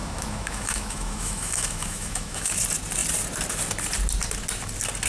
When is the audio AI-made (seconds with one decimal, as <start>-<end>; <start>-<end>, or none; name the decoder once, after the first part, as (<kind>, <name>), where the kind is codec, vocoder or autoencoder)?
0.0-2.6 (autoencoder, DAC-VAE)